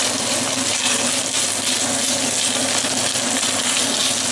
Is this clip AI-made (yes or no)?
no